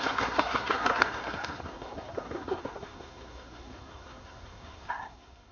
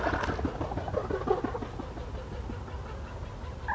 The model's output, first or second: first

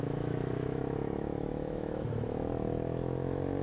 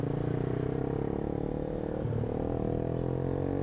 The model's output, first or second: first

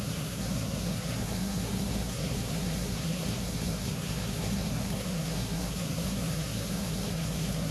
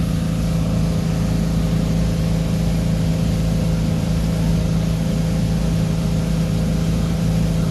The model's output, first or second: first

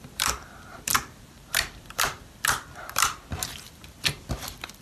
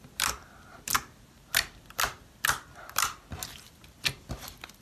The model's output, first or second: first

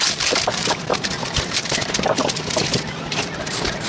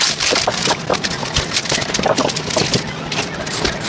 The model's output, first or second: first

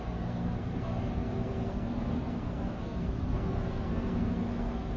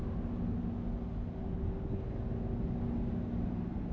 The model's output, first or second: first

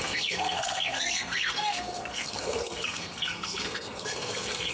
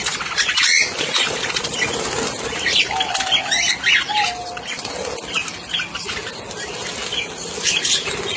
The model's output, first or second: first